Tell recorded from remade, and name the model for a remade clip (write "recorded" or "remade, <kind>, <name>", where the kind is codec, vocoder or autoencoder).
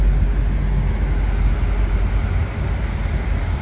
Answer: recorded